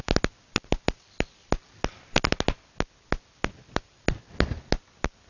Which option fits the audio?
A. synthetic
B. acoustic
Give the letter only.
B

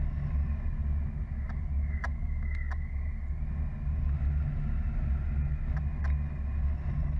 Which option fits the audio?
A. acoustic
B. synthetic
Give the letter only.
A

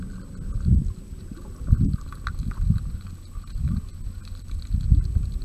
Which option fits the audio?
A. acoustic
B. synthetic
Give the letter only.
A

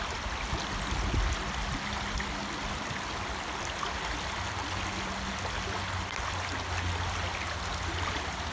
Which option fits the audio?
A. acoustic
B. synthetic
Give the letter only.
A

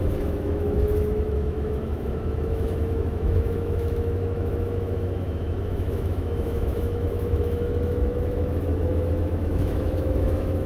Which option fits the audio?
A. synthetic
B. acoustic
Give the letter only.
A